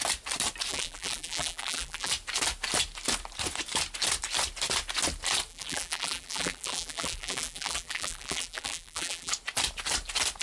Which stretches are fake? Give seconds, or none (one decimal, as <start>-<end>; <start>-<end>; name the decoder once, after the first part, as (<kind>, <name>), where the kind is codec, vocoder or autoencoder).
0.7-2.1 (vocoder, BigVGAN v2); 5.5-9.3